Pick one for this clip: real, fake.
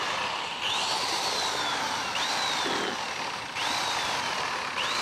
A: fake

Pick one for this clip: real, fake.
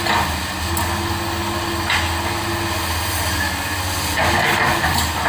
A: real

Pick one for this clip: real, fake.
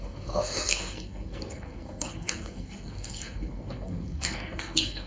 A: fake